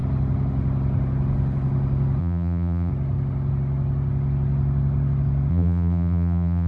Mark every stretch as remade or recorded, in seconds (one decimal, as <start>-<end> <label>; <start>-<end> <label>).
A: 0.0-2.2 recorded; 2.2-2.9 remade; 2.9-5.5 recorded; 5.5-6.7 remade